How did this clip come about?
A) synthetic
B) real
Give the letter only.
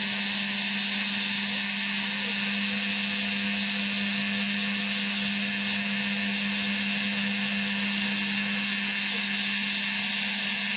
B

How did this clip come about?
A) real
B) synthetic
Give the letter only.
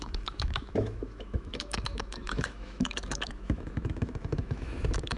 B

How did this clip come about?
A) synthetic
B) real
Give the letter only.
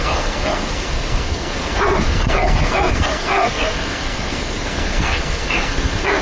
A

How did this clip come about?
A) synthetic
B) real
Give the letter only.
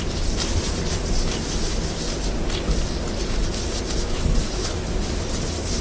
A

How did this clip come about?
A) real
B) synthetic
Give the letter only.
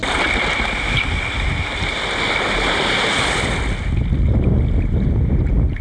A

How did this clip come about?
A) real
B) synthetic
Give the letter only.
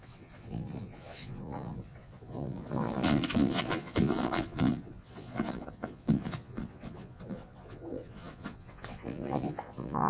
B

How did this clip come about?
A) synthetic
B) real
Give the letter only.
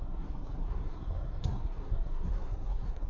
A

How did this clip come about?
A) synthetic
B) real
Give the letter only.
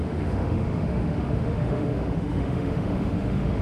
A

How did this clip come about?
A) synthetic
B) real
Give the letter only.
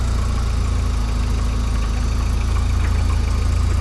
B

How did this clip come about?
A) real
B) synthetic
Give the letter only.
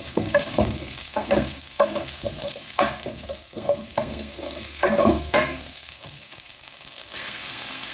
B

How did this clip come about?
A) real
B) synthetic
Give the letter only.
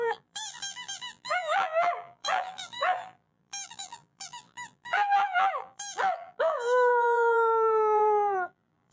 B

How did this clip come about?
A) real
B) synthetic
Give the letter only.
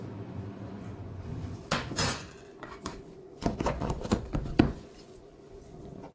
B